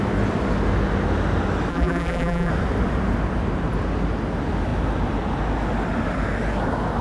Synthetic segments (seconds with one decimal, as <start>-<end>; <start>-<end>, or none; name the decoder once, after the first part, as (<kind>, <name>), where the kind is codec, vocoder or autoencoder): 1.7-2.5 (vocoder, BigVGAN v2)